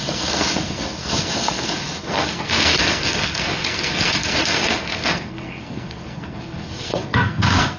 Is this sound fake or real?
fake